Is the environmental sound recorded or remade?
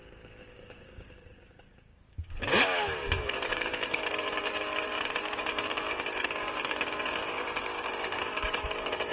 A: remade